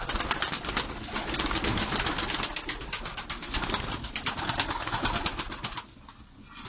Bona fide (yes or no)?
yes